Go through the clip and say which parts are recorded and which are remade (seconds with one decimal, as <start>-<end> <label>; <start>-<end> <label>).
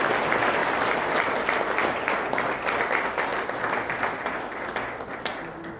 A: 0.0-5.8 recorded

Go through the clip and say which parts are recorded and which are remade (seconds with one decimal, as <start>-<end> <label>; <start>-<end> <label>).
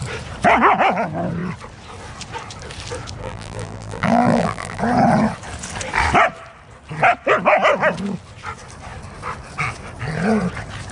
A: 0.0-3.2 recorded; 3.2-4.8 remade; 4.8-10.9 recorded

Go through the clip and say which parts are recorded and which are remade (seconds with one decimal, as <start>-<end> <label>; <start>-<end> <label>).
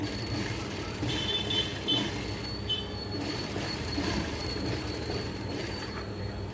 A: 0.0-1.7 remade; 1.7-3.2 recorded; 3.2-6.5 remade